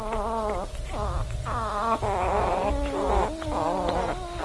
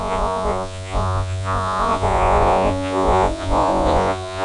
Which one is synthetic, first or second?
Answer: second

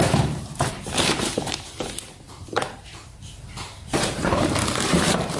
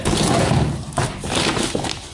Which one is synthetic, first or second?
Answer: first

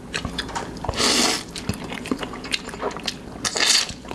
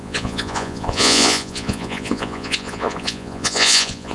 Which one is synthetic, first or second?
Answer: second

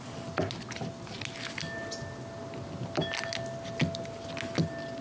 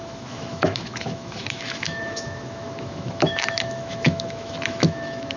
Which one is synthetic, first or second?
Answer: second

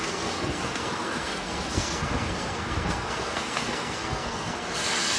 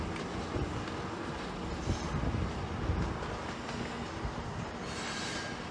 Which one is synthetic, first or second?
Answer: first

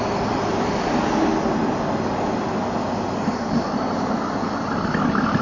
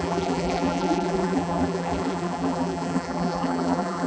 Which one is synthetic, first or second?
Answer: second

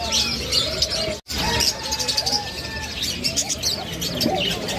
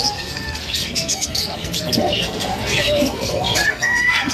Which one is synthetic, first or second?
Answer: second